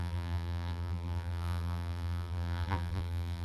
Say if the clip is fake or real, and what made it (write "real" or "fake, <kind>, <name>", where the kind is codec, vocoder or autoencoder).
fake, vocoder, BigVGAN v2